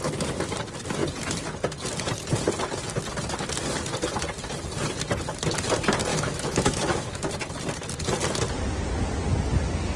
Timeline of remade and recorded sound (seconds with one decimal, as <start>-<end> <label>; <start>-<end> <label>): 0.0-6.1 recorded; 6.1-7.3 remade; 7.3-10.0 recorded